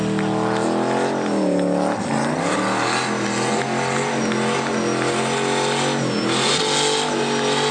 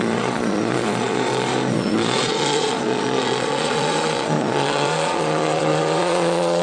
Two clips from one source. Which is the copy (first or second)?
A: second